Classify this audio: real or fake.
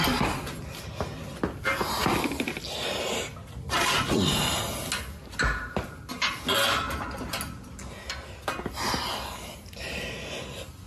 real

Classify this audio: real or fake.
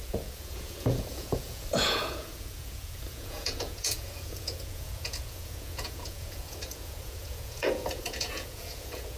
fake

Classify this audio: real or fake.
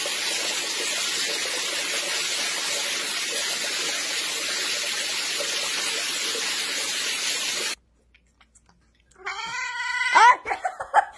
real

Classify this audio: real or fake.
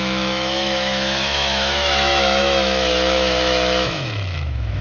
fake